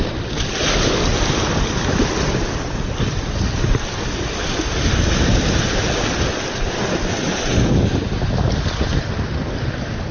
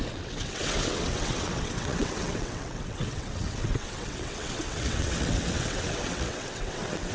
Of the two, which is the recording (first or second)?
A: first